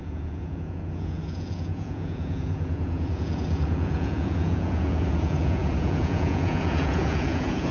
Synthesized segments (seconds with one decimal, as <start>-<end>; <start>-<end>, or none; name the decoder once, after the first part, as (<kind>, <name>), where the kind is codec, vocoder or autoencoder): 0.0-7.7 (vocoder, Vocos)